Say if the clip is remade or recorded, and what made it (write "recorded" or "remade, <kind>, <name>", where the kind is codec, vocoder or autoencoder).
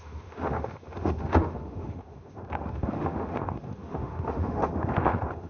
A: remade, autoencoder, DAC-VAE